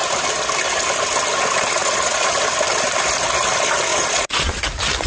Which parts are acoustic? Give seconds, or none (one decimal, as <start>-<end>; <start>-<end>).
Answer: 0.0-1.8; 2.3-3.9; 4.6-5.1